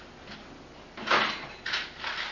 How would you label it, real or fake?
real